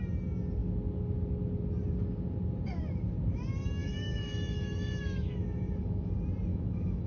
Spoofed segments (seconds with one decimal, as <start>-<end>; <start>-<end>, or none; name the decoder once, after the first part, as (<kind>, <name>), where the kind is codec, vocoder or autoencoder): 3.8-6.1 (autoencoder, DAC-VAE); 6.5-7.1